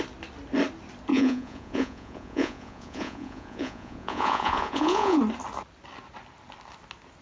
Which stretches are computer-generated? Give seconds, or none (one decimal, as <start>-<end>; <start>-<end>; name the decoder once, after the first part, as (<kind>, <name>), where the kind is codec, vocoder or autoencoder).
1.1-5.2 (vocoder, Vocos)